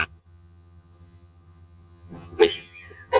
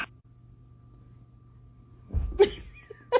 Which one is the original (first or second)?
second